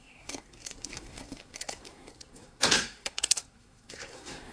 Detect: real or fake fake